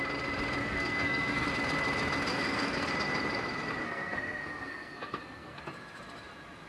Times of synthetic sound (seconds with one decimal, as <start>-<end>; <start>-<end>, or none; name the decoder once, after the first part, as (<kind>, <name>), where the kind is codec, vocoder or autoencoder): 0.6-1.5 (codec, SNAC); 2.3-2.9; 3.8-5.6